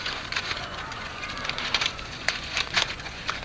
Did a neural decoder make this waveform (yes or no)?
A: yes